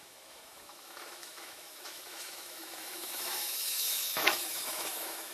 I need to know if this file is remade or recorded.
remade